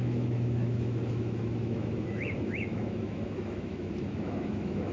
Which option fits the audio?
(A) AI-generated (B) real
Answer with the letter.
A